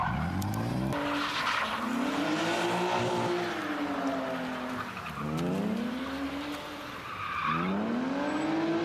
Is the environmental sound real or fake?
real